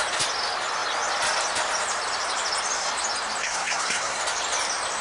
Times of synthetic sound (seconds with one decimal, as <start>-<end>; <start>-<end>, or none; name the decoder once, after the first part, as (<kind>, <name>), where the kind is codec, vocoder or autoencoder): 3.4-4.2 (codec, SNAC)